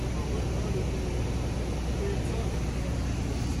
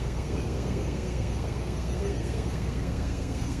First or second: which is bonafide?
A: first